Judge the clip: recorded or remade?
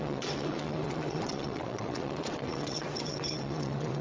remade